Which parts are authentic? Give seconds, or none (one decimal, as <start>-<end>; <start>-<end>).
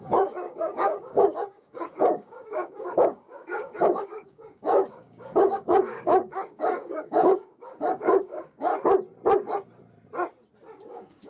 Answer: 8.7-10.8